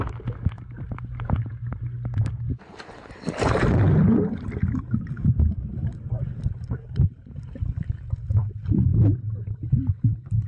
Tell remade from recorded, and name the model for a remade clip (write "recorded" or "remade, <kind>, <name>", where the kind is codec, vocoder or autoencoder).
recorded